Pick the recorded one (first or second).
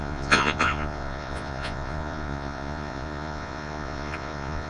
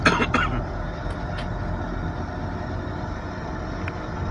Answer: second